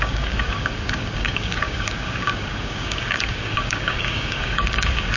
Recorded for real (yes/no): no